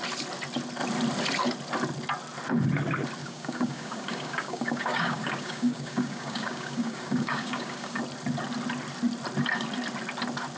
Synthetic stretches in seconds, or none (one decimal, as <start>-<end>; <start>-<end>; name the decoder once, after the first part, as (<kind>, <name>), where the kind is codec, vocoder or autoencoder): 3.2-8.0 (codec, DAC)

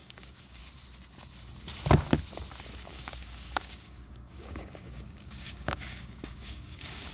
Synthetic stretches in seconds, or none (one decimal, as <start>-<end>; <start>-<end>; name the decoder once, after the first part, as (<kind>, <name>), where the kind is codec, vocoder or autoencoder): 0.0-0.6 (codec, DAC); 2.9-7.1

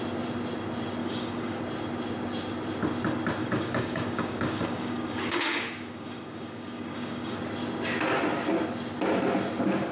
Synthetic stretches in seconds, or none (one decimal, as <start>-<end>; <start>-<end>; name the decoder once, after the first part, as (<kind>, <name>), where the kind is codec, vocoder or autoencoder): 1.0-1.6 (codec, DAC); 3.4-7.4

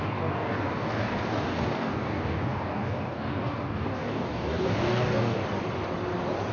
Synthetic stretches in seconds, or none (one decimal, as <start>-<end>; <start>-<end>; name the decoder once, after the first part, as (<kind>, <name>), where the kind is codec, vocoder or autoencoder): 0.0-5.4 (codec, DAC)

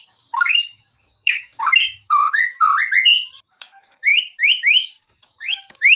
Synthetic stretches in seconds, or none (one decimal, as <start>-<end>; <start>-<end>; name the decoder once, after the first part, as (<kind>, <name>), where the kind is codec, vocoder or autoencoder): 0.0-2.7 (codec, DAC); 3.5-6.0

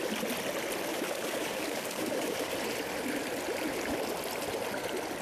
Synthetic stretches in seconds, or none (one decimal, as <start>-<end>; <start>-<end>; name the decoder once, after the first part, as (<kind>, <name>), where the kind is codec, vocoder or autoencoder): 0.9-2.5 (codec, DAC)

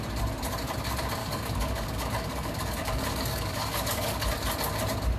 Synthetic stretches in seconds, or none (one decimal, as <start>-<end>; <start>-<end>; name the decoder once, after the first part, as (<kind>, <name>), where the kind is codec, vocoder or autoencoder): 1.2-4.3 (codec, DAC)